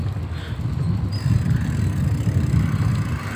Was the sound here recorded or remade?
recorded